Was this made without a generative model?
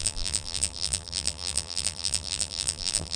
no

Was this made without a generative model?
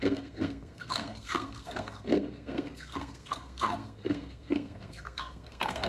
no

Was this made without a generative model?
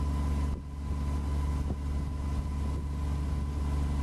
yes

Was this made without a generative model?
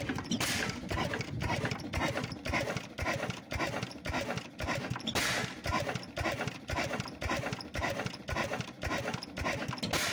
yes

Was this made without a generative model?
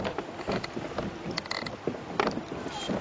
yes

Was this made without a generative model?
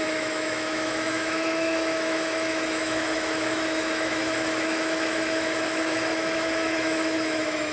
no